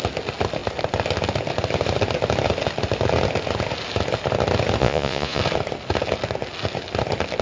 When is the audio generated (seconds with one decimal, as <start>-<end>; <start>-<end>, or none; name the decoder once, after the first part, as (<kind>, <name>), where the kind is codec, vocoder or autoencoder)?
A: 4.8-5.4 (vocoder, Vocos)